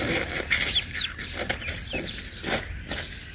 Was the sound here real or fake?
real